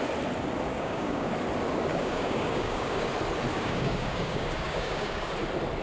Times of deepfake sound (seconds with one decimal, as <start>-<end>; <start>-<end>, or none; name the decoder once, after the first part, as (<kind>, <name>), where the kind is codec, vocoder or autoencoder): 0.7-1.3 (codec, DAC); 1.9-3.1; 3.5-5.3